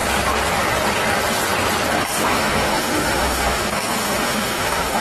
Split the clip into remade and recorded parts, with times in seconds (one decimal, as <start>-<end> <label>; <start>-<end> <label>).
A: 0.0-2.0 recorded; 2.0-5.0 remade